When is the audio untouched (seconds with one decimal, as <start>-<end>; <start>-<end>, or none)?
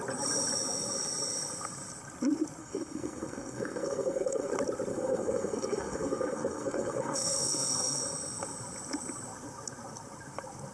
0.0-2.6; 4.5-4.9; 8.0-10.7